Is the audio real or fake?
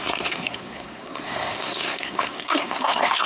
fake